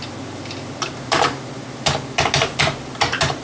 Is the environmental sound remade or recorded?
recorded